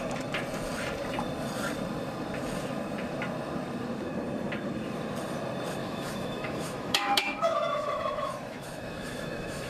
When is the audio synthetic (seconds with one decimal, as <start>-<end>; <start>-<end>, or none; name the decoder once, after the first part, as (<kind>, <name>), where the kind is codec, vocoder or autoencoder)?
5.8-9.7 (autoencoder, DAC-VAE)